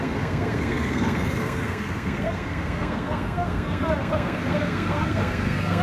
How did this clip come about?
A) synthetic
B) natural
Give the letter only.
A